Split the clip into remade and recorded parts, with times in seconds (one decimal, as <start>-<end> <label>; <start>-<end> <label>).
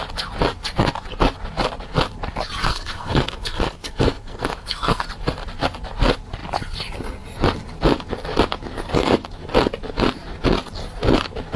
0.0-2.6 recorded; 2.6-5.1 remade; 5.1-11.6 recorded